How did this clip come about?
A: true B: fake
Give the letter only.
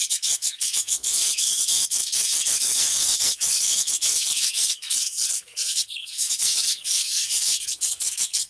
B